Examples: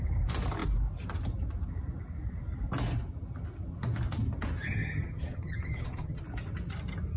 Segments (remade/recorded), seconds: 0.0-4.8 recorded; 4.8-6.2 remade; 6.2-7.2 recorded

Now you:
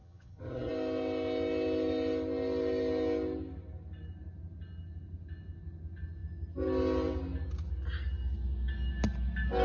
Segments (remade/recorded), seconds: 0.0-0.7 remade; 0.7-9.6 recorded

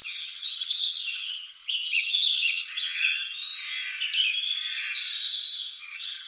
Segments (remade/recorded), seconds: 0.0-3.6 remade; 3.6-5.8 recorded; 5.8-6.3 remade

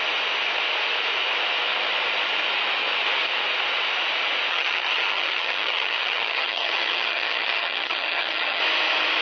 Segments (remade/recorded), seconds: 0.0-4.5 recorded; 4.5-8.6 remade; 8.6-9.2 recorded

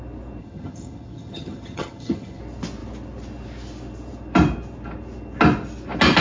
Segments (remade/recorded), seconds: 0.0-0.4 recorded; 0.4-2.4 remade; 2.4-6.2 recorded

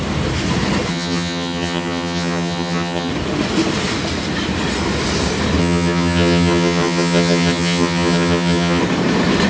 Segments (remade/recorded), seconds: 0.0-0.9 recorded; 0.9-3.1 remade; 3.1-5.6 recorded; 5.6-8.8 remade; 8.8-9.5 recorded